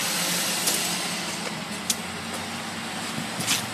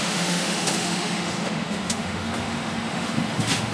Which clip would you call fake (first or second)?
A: second